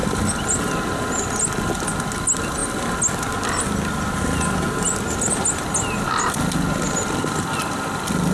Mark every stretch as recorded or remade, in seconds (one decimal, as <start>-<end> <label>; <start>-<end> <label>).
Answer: 0.0-8.3 recorded